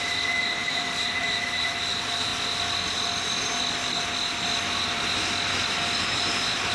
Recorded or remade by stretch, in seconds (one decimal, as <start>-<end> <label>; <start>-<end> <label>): 0.0-2.3 remade; 2.3-6.0 recorded; 6.0-6.7 remade